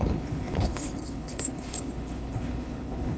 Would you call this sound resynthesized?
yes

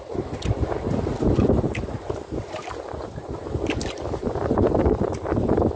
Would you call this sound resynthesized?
no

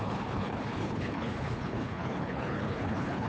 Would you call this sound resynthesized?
yes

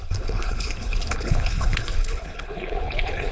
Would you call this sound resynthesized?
yes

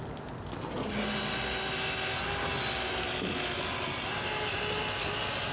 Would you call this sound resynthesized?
no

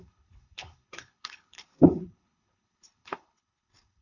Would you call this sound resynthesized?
yes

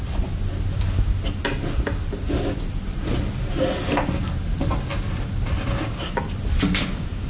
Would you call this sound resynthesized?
no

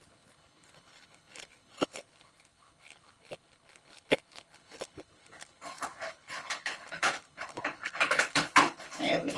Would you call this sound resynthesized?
yes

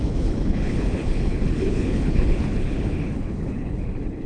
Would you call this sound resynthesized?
yes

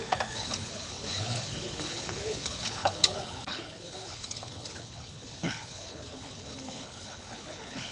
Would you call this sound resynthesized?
yes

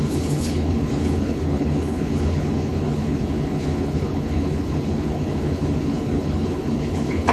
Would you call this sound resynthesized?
yes